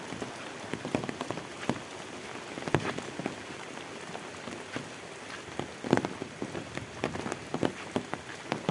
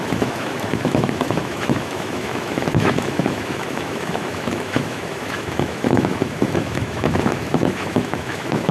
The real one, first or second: first